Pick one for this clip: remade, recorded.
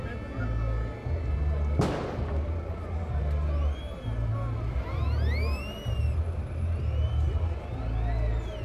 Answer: recorded